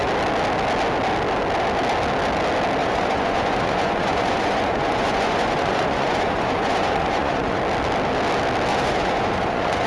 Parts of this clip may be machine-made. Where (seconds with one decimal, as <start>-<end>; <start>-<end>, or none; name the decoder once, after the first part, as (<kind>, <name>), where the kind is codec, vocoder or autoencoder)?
2.8-7.6 (vocoder, Vocos); 8.7-9.9